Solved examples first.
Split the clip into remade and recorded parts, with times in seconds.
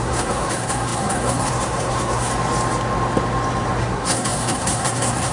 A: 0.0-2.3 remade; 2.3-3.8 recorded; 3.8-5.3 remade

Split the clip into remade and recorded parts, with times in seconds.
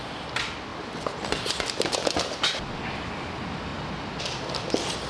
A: 0.0-0.7 recorded; 0.7-2.8 remade; 2.8-5.1 recorded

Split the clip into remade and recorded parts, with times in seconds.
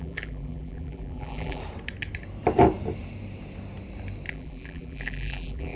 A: 0.0-1.6 remade; 1.6-4.3 recorded; 4.3-5.8 remade